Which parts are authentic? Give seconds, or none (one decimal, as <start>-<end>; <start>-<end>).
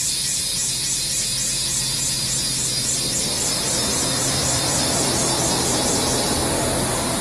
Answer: 0.5-3.2; 5.2-7.2